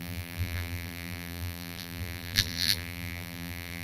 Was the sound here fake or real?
fake